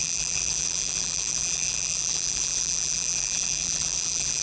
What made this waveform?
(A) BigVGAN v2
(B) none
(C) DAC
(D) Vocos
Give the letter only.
A